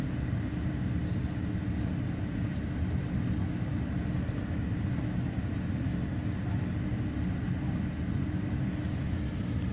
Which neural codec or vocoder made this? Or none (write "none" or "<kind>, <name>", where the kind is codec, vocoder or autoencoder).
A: none